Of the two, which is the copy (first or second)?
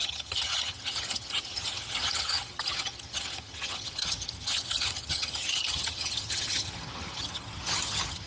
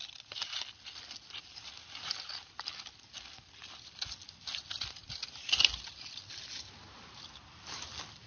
first